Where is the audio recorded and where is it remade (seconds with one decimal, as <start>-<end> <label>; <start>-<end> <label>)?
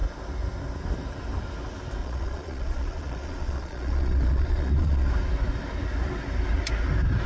0.0-2.0 recorded; 2.0-5.1 remade; 5.1-7.3 recorded